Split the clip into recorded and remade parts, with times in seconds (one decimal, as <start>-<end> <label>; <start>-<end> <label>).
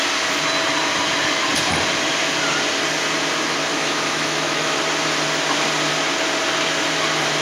0.0-3.7 recorded; 3.7-4.8 remade; 4.8-7.4 recorded